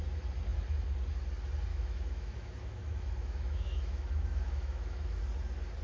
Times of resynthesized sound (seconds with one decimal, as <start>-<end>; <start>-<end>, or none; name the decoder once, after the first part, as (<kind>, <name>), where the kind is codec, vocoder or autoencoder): 1.7-5.2 (autoencoder, DAC-VAE)